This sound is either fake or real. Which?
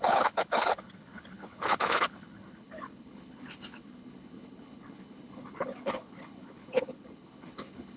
fake